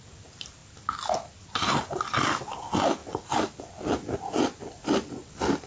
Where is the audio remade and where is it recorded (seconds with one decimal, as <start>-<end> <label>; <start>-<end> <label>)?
0.0-0.6 recorded; 0.6-1.4 remade; 1.4-5.7 recorded